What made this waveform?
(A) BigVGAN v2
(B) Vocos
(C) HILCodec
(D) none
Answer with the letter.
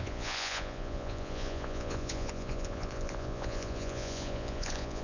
B